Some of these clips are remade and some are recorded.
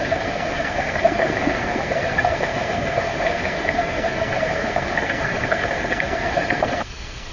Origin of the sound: remade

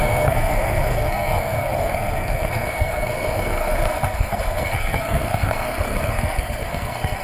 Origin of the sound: remade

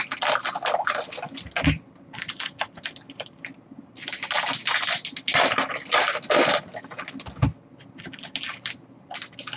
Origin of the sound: recorded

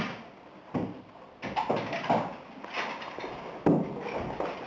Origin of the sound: recorded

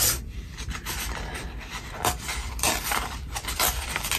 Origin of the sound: remade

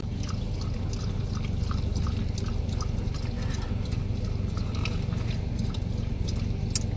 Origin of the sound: recorded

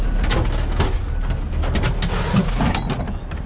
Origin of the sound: recorded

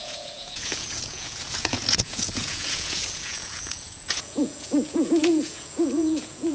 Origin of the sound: remade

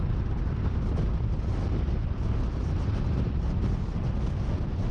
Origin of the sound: recorded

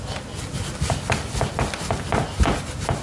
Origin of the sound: recorded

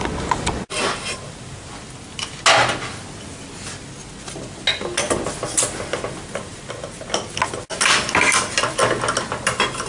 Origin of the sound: recorded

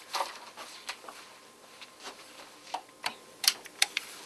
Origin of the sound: remade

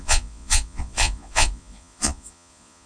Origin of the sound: remade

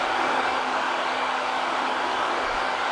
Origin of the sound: remade